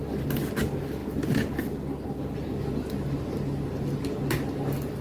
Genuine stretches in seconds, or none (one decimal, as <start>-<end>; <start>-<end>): 0.0-5.0